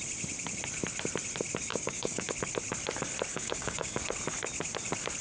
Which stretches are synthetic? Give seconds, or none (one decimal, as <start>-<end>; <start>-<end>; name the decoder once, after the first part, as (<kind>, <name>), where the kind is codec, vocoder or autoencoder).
1.7-2.3 (codec, DAC); 3.3-4.0